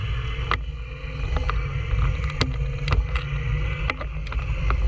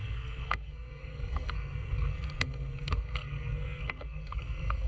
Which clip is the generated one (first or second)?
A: second